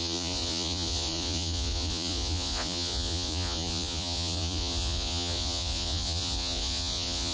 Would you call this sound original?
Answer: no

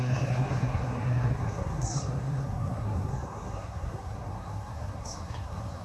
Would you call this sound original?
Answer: no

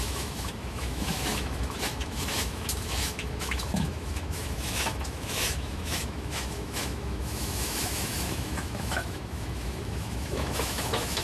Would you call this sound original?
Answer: no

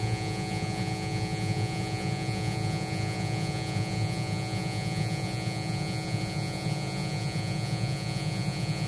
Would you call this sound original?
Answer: no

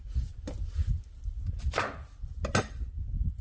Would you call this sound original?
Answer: yes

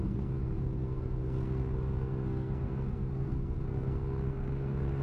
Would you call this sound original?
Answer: no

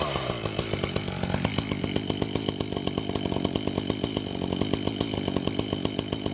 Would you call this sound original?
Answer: yes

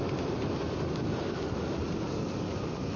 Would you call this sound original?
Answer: yes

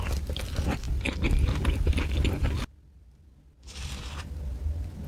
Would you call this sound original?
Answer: yes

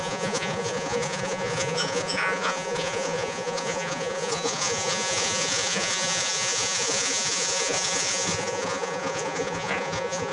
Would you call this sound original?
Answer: no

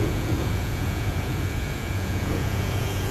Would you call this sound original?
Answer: no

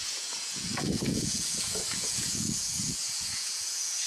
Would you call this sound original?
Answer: no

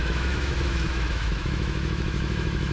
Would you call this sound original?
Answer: no